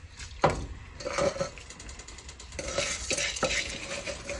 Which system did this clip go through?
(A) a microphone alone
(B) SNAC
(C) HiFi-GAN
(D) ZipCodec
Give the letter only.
A